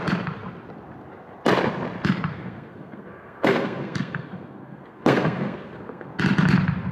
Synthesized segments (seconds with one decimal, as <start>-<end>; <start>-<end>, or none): 2.3-6.1